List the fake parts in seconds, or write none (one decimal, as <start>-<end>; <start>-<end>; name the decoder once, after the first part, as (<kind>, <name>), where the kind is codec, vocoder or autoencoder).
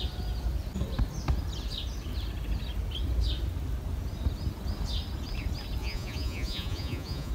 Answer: 5.8-7.3 (vocoder, Vocos)